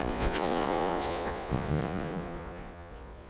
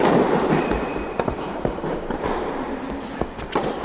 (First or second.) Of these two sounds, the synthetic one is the first